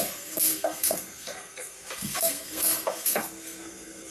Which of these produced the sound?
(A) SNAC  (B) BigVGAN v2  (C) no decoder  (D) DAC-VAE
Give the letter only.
A